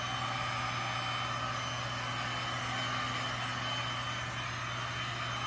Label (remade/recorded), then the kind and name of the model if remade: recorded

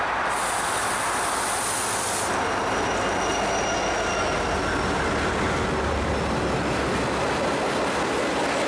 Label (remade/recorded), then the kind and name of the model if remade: recorded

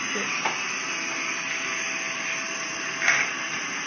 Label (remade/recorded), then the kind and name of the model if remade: recorded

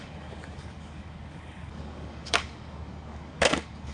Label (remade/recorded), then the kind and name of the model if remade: remade, codec, DAC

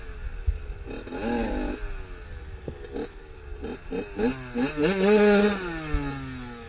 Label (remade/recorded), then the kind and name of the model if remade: recorded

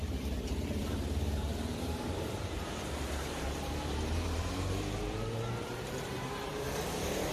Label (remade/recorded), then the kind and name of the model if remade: remade, vocoder, BigVGAN v2